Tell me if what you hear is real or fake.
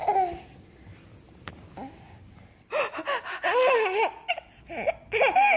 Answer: real